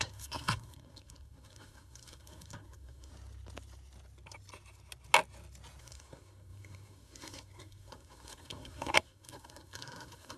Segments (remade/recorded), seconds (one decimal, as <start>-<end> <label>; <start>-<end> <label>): 0.0-3.1 remade; 3.1-5.8 recorded; 5.8-10.4 remade